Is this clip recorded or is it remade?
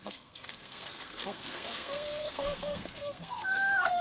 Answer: remade